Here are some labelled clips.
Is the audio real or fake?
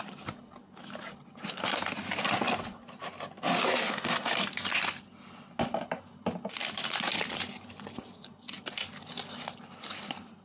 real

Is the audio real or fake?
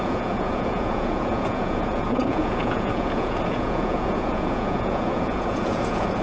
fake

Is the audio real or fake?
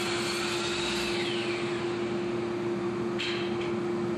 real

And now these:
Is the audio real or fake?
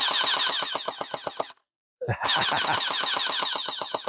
real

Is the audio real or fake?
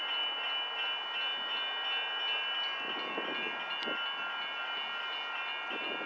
real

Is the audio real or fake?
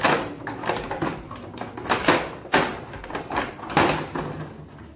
real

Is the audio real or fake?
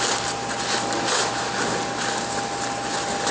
real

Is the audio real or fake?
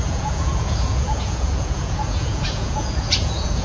fake